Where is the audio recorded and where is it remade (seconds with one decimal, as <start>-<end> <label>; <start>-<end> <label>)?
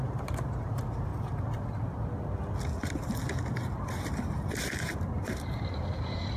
0.0-1.1 remade; 1.1-4.9 recorded; 4.9-6.4 remade